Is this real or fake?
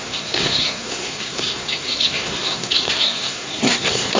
fake